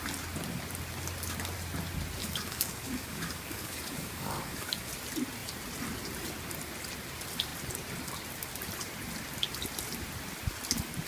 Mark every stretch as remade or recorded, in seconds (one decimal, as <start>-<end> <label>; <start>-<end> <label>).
0.0-2.2 recorded; 2.2-4.9 remade; 4.9-11.1 recorded